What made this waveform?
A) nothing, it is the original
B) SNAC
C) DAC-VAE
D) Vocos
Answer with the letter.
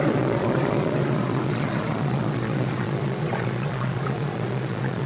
D